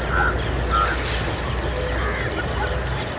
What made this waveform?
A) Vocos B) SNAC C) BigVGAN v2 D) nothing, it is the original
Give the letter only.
D